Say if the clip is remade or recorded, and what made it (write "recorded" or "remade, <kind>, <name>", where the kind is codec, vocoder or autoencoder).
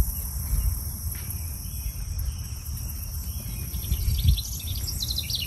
recorded